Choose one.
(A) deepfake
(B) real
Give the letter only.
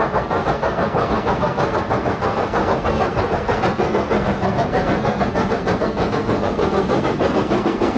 A